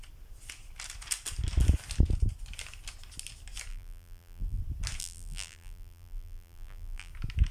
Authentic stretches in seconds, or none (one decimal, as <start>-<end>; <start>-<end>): 0.0-3.7; 4.6-5.0; 7.1-7.5